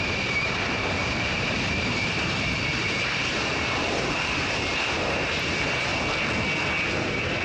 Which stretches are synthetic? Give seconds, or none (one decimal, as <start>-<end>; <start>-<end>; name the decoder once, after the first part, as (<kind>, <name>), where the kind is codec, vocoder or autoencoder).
0.0-5.9 (vocoder, BigVGAN v2); 6.9-7.4